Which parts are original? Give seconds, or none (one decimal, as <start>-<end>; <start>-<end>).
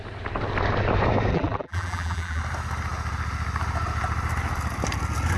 0.0-1.3; 2.4-5.4